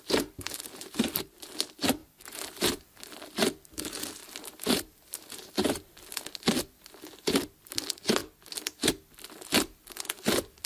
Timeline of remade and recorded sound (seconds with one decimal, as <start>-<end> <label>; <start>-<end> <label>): 0.0-2.0 recorded; 2.0-2.6 remade; 2.6-4.2 recorded; 4.2-5.5 remade; 5.5-10.7 recorded